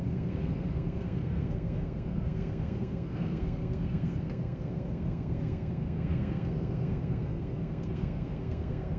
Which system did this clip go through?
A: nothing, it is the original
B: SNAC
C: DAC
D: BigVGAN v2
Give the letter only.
B